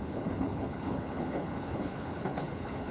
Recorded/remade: remade